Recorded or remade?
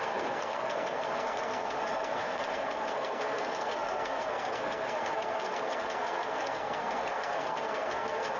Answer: remade